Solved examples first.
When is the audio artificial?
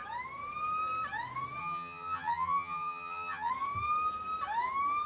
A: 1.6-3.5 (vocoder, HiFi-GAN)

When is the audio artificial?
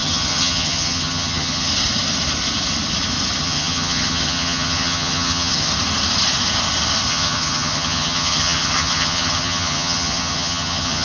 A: 0.0-1.7 (vocoder, HiFi-GAN); 3.4-5.7; 7.1-11.0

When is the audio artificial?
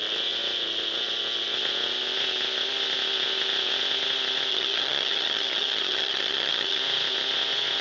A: 4.5-6.8 (vocoder, HiFi-GAN)